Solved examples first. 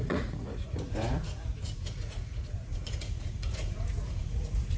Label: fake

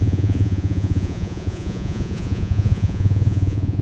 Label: fake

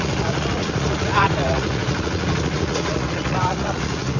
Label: fake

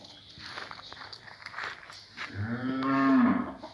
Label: real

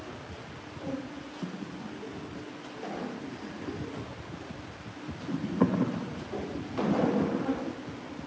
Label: real